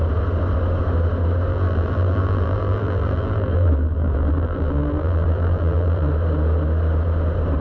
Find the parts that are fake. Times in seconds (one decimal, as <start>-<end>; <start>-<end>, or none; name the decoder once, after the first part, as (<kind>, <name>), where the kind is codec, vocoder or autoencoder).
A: 1.5-6.1 (vocoder, BigVGAN v2)

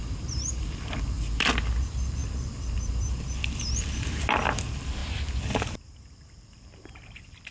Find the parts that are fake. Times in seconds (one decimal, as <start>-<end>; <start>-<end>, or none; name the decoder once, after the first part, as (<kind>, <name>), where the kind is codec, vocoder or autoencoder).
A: 0.0-5.0 (vocoder, BigVGAN v2); 6.1-7.5

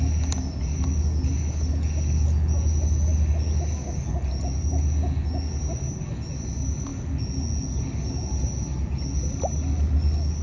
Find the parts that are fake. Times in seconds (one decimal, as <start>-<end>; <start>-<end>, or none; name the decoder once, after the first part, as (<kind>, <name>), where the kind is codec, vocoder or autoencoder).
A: none

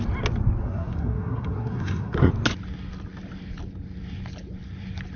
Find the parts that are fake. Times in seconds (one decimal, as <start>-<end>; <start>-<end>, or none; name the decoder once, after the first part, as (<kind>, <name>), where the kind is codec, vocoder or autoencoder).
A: 0.6-2.3 (codec, SNAC)